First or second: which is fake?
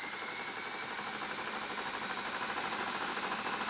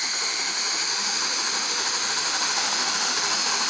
second